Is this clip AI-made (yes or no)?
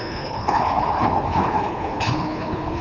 yes